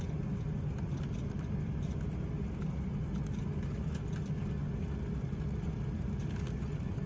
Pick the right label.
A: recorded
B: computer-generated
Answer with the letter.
A